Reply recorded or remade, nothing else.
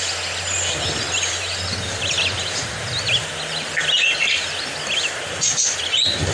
recorded